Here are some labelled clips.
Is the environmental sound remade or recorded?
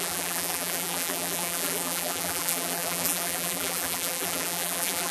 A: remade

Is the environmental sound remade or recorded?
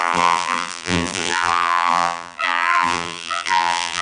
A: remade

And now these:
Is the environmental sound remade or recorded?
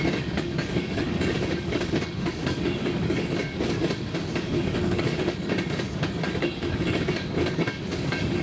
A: remade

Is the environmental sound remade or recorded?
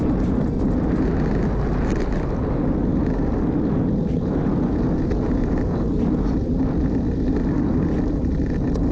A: recorded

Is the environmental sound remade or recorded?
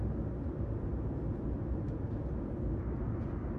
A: recorded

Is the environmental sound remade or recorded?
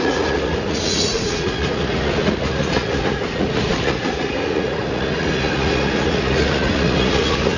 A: remade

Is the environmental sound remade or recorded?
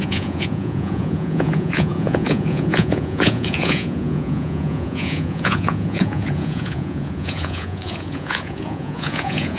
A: remade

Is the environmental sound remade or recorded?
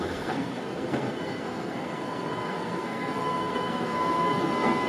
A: remade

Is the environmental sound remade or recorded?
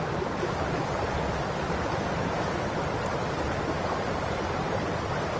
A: recorded